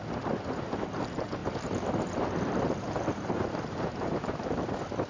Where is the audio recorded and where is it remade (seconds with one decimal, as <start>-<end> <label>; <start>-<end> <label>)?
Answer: 0.0-1.4 recorded; 1.4-4.5 remade; 4.5-5.1 recorded